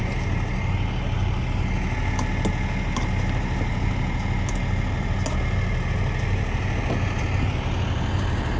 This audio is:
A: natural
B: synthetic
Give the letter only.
A